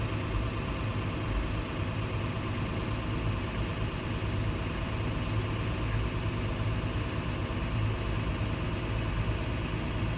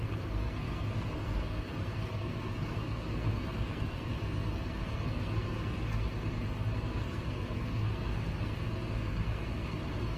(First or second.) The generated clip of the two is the second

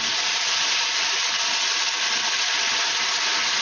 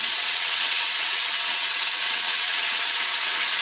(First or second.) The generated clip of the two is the second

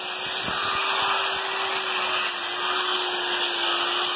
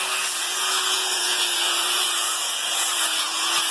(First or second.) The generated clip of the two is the second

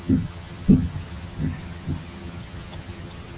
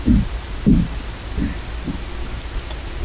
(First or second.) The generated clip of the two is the first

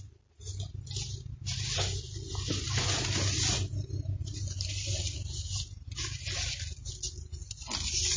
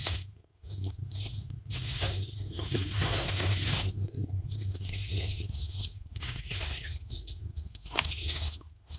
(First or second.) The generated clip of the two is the second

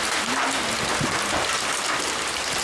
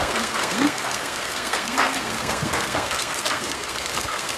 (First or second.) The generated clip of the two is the second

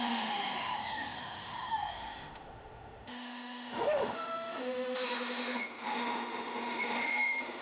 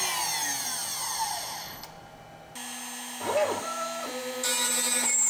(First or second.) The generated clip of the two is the first